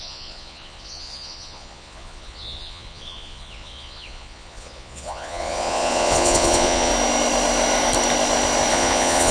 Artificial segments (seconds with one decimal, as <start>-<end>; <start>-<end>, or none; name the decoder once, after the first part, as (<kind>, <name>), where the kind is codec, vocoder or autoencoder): 0.0-6.9 (vocoder, Vocos); 8.7-9.3